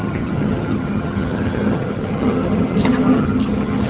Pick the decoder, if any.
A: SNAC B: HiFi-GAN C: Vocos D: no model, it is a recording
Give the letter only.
B